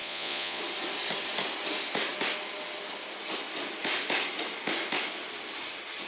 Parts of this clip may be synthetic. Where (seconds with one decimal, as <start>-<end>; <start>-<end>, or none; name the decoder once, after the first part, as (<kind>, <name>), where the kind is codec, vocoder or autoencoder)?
0.0-0.6 (vocoder, Vocos)